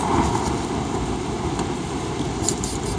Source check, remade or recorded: recorded